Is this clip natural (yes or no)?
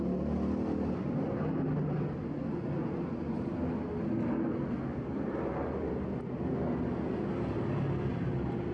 yes